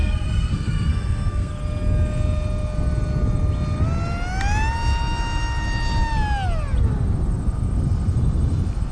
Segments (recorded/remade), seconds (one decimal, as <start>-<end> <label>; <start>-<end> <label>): 0.0-1.5 remade; 1.5-8.9 recorded